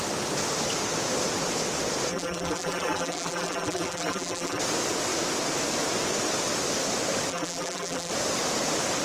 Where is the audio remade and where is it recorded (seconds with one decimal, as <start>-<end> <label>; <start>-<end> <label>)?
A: 0.0-2.1 recorded; 2.1-4.6 remade; 4.6-7.3 recorded; 7.3-8.1 remade; 8.1-9.0 recorded